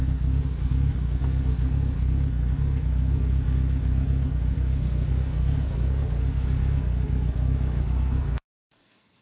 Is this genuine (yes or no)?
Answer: no